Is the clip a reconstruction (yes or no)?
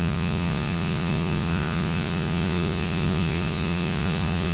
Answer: yes